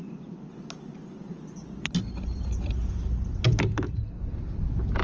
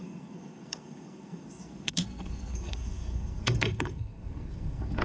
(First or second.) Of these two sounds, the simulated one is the second